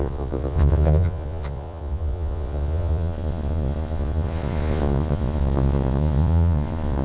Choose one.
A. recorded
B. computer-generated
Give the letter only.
B